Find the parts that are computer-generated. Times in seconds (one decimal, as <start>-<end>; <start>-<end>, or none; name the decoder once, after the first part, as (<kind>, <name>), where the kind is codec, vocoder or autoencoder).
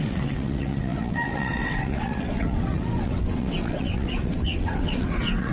0.0-5.5 (vocoder, WaveNeXt)